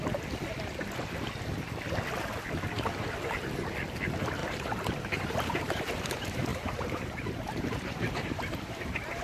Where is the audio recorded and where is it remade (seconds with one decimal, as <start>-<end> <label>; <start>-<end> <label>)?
0.0-4.4 recorded; 4.4-6.1 remade; 6.1-6.5 recorded; 6.5-9.2 remade